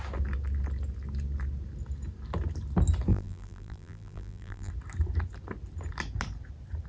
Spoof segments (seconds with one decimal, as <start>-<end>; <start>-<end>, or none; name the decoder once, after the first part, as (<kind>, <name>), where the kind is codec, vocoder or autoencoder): 3.1-4.7 (vocoder, BigVGAN v2)